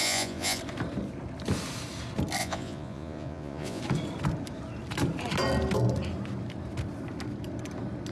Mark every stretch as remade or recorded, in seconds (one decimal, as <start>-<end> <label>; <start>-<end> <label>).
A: 0.0-0.6 remade; 0.6-2.4 recorded; 2.4-3.8 remade; 3.8-8.1 recorded

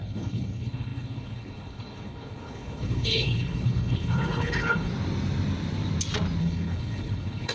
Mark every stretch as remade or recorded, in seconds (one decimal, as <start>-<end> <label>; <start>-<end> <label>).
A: 0.0-4.9 remade; 4.9-6.4 recorded; 6.4-7.5 remade

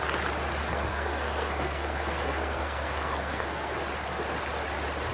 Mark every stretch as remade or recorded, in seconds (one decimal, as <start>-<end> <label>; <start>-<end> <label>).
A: 0.0-0.6 recorded; 0.6-3.7 remade; 3.7-5.1 recorded

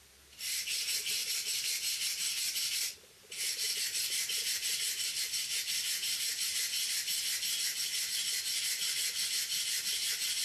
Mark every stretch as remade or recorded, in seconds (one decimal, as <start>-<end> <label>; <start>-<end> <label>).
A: 0.0-1.2 recorded; 1.2-4.4 remade; 4.4-10.4 recorded

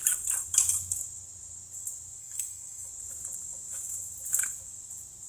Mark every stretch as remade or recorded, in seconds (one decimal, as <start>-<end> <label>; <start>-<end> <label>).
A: 0.0-2.2 recorded; 2.2-2.9 remade; 2.9-5.3 recorded

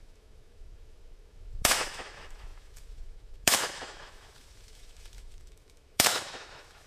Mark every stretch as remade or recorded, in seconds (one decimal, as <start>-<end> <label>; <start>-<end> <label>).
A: 0.0-6.9 remade

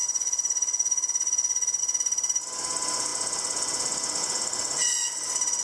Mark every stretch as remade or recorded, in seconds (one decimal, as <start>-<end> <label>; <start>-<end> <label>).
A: 0.0-1.8 remade; 1.8-5.6 recorded